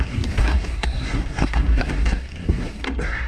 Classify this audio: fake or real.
fake